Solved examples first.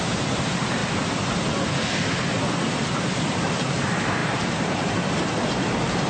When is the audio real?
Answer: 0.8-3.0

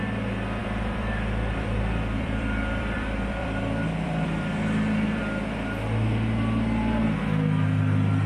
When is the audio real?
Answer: 0.0-0.6; 5.2-8.3

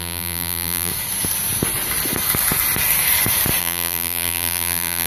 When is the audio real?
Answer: 0.9-3.6

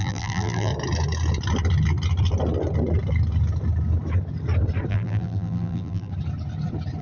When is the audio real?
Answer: 0.7-4.9; 6.1-7.0

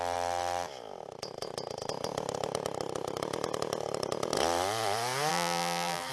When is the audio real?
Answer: 0.0-5.3

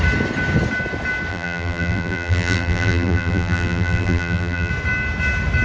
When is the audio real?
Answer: 0.0-1.3; 4.7-5.6

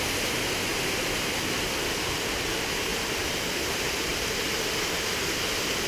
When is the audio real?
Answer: 0.0-2.9; 3.6-4.1; 5.2-5.9